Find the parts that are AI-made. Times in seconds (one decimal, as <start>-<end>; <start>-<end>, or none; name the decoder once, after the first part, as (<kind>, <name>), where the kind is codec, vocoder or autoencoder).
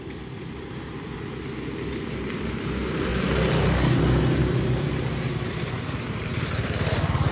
0.0-3.1 (vocoder, BigVGAN v2); 4.4-7.3